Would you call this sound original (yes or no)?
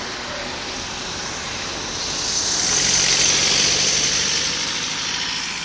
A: yes